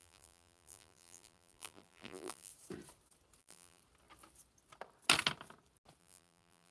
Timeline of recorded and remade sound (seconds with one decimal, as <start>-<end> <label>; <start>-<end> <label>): 0.0-2.5 remade; 2.5-3.4 recorded; 3.4-3.8 remade; 3.8-6.0 recorded; 6.0-6.7 remade